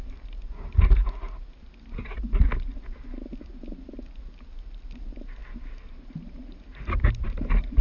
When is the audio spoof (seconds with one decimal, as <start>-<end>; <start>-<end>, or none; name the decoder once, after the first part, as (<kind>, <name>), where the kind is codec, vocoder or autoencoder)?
none

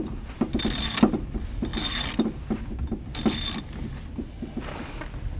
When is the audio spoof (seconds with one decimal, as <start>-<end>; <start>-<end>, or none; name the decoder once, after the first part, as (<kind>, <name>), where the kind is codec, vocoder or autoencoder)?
none

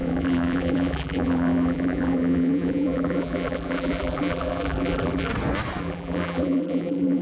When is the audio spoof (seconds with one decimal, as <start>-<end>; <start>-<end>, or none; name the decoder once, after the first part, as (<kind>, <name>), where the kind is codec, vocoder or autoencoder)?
0.0-5.3 (vocoder, BigVGAN v2); 5.8-7.2

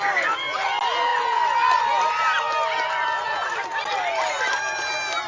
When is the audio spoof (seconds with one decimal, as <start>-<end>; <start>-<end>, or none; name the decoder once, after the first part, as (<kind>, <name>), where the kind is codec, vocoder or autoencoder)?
none